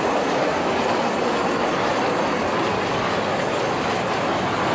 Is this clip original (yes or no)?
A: yes